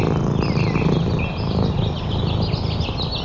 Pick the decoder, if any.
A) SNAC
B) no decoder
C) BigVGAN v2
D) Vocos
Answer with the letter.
B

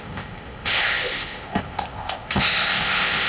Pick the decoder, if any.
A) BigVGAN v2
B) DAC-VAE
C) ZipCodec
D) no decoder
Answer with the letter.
C